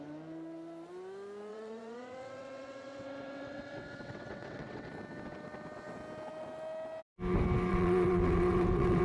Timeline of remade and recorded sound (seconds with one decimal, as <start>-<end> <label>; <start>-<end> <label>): 0.0-1.5 recorded; 1.5-4.9 remade; 4.9-7.7 recorded; 7.7-9.0 remade